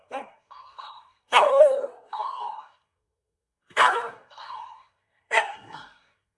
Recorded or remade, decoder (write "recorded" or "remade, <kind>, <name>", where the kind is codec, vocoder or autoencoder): remade, codec, SNAC